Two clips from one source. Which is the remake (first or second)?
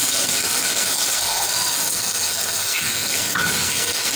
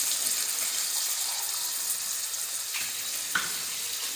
first